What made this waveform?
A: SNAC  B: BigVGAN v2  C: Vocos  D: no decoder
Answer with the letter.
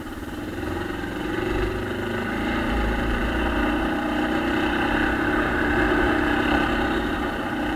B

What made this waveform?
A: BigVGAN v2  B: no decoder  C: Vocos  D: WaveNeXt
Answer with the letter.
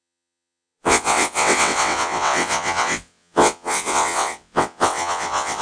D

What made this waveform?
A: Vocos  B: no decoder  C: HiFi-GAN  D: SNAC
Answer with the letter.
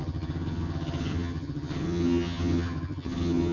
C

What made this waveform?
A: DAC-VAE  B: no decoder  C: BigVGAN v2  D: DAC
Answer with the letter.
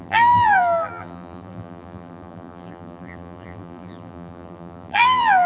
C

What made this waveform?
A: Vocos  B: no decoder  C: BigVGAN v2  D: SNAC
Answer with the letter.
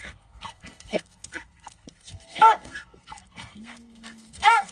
D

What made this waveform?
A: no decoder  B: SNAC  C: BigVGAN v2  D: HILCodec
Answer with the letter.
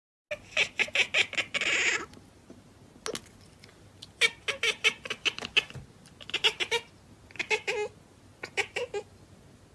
A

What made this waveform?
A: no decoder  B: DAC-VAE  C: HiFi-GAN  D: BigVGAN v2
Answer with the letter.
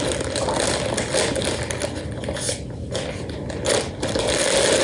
A